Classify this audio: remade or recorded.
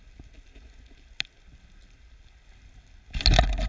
recorded